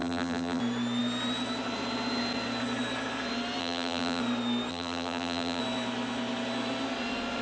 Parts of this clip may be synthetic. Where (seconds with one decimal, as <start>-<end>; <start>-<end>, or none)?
0.0-0.6; 3.6-4.2; 4.7-5.6